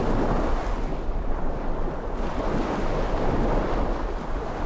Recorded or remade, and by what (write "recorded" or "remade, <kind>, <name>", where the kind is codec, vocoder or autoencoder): recorded